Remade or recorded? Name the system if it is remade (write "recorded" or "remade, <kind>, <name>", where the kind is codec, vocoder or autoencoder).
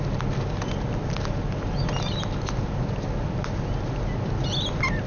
recorded